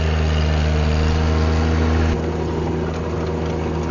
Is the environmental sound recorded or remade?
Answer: recorded